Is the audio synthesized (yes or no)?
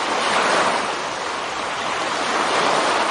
no